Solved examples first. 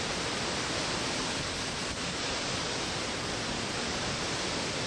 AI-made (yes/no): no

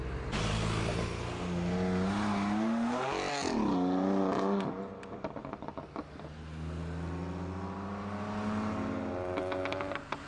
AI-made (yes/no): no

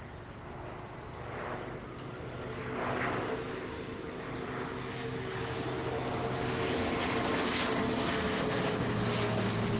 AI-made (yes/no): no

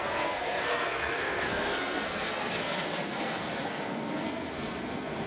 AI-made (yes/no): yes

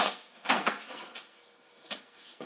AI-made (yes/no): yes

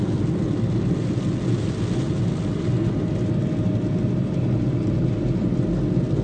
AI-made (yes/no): no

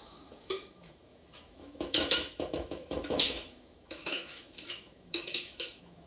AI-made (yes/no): yes